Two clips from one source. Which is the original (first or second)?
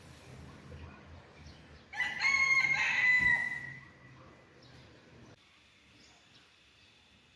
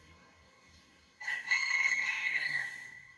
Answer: first